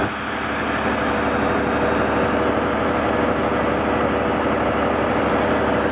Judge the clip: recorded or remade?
recorded